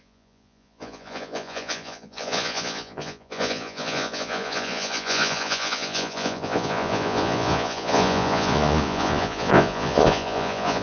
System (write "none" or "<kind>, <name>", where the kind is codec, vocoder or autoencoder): vocoder, Vocos